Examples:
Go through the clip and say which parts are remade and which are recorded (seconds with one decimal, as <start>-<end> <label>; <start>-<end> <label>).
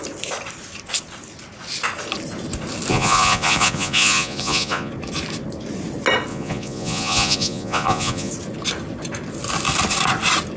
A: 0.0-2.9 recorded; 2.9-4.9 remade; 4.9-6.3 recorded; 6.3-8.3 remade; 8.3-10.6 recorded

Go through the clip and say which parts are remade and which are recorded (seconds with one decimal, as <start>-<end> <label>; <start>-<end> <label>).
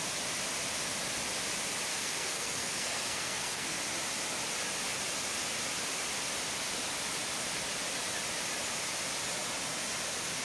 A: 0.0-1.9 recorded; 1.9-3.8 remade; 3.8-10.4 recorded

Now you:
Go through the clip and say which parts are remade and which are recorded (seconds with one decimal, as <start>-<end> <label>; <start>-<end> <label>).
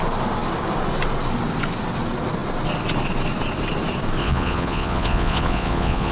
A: 0.0-4.2 recorded; 4.2-6.1 remade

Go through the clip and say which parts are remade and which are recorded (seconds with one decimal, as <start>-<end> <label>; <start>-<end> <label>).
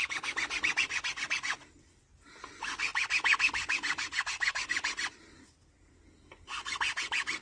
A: 0.0-7.4 recorded